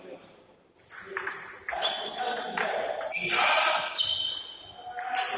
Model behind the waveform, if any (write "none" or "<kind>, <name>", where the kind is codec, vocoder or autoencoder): none